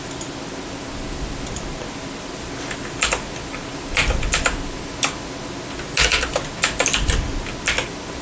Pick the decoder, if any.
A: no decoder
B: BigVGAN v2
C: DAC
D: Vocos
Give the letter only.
A